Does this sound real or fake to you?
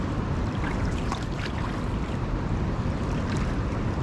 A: real